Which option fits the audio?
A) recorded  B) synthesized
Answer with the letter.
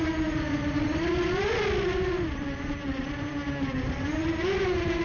A